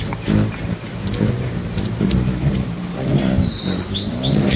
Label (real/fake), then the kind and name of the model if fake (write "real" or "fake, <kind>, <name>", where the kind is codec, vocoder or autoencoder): real